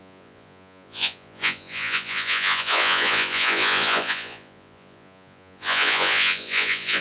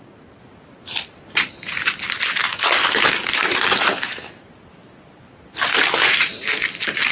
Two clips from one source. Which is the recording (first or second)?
second